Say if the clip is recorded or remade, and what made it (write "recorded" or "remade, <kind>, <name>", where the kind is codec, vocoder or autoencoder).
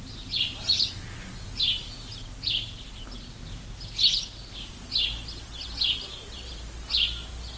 recorded